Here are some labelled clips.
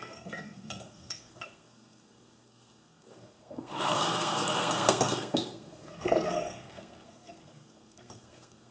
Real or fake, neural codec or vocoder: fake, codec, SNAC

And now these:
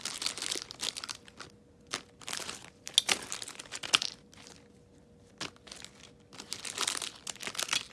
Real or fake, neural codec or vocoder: real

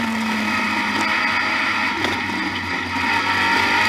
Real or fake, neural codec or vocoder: real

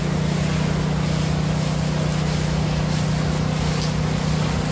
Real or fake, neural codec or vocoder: real